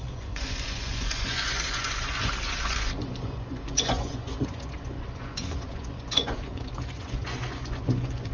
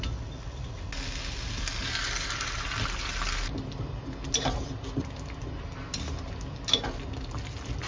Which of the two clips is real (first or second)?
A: second